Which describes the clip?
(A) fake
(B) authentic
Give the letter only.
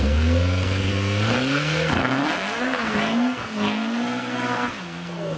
A